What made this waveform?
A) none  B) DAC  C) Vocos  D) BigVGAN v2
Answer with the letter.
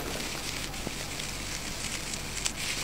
A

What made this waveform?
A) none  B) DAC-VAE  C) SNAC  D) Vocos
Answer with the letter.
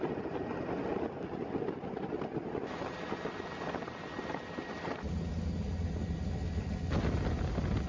A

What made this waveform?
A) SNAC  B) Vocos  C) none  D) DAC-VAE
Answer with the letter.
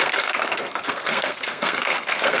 A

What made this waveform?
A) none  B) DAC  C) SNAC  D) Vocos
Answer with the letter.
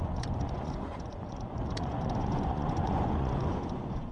D